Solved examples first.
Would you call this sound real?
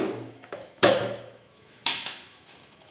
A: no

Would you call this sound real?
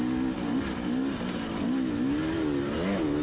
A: yes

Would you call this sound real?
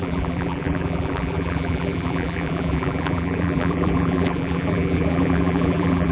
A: no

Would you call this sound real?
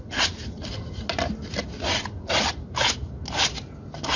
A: yes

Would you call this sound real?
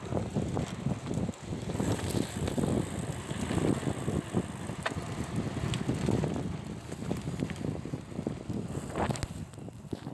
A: yes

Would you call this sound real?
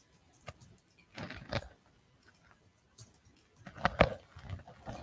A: yes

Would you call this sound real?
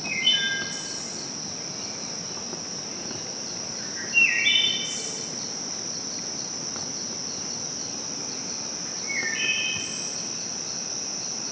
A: yes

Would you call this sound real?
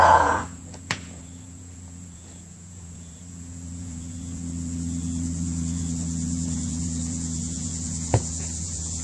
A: no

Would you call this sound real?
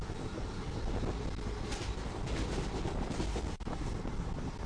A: yes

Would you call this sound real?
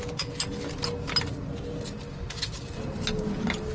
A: yes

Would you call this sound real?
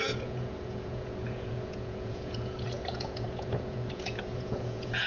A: no